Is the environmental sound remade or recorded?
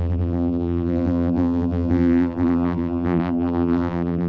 remade